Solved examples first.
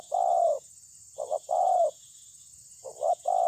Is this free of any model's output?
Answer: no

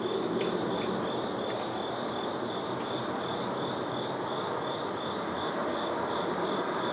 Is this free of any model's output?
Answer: yes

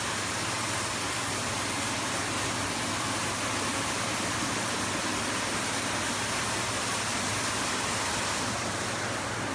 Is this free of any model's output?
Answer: yes